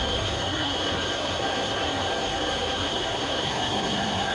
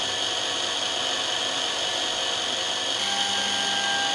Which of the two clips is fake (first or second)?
first